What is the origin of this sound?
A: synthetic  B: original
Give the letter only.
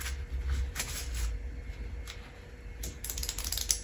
B